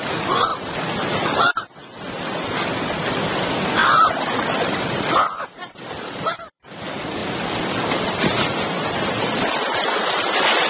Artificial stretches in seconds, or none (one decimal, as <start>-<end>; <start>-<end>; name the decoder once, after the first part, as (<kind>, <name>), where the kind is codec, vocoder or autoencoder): 0.5-1.4 (vocoder, BigVGAN v2); 3.8-6.8